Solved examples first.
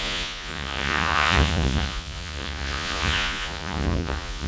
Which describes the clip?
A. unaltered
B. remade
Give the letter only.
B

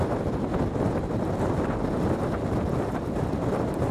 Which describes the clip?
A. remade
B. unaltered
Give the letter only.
B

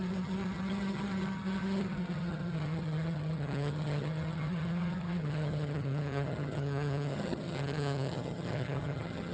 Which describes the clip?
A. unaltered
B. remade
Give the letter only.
B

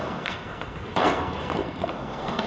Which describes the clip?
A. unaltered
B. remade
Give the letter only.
B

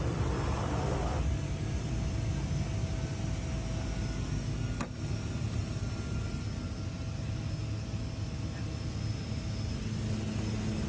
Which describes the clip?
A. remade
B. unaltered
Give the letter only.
B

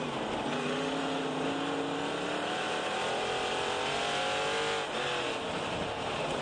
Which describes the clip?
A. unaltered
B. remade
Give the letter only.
A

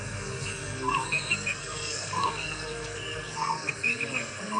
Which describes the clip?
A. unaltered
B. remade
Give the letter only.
B